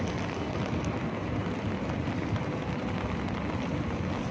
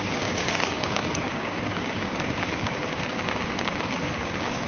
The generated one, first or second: second